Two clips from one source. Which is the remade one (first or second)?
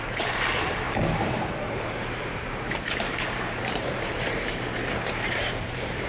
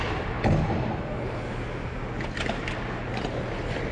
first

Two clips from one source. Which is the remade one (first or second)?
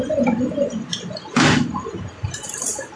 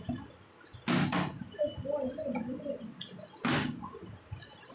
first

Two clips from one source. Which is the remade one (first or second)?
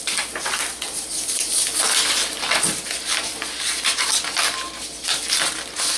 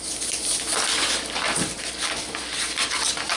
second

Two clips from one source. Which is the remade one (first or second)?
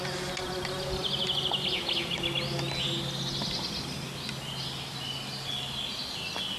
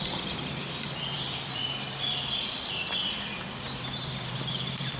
second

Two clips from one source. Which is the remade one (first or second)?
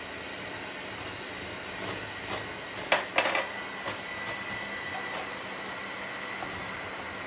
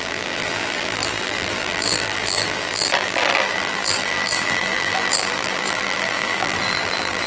second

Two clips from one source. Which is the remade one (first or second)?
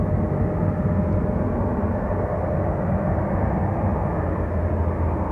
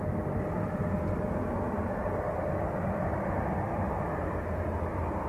second